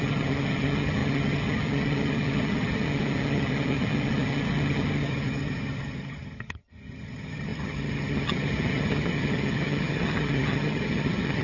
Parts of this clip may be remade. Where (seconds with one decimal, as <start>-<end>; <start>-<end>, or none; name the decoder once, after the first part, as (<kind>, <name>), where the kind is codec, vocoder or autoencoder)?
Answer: 0.0-11.4 (vocoder, HiFi-GAN)